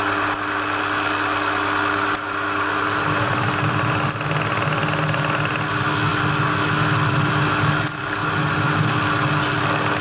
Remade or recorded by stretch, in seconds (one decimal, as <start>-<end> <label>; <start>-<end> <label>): 0.0-10.0 recorded